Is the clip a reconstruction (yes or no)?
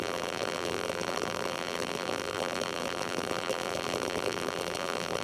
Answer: yes